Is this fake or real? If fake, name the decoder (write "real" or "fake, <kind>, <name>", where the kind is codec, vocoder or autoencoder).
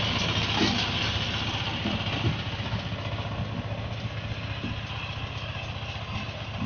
real